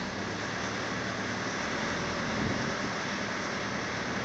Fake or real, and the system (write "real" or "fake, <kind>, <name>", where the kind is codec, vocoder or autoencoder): real